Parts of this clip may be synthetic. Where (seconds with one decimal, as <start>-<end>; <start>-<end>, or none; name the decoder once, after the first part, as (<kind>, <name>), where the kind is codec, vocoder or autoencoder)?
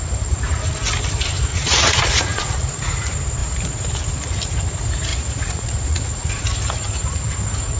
1.5-2.7 (vocoder, Vocos); 5.1-6.3